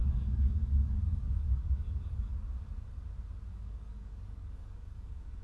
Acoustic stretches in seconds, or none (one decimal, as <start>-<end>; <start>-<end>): 2.3-3.5